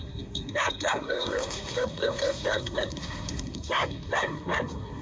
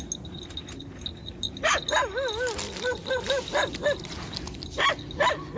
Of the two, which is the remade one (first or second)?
first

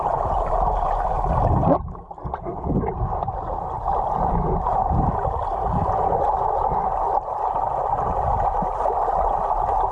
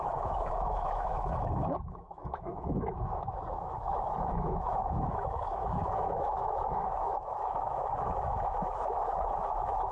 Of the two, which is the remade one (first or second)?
second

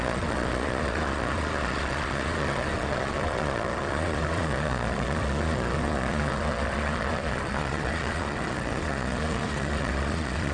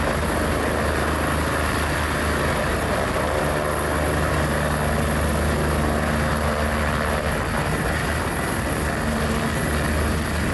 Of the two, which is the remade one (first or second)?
first